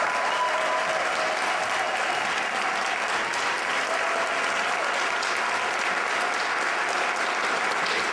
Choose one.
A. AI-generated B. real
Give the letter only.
B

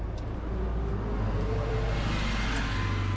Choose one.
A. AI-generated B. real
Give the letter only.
B